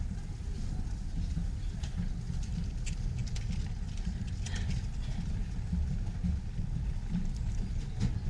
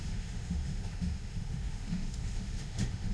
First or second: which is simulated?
second